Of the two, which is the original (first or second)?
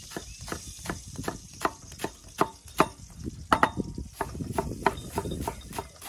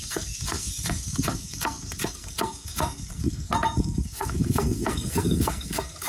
first